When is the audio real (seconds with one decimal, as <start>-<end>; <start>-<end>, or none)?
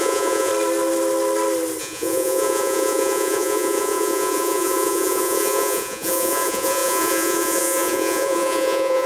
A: 0.5-1.8